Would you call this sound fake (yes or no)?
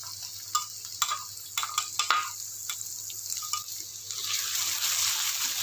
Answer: no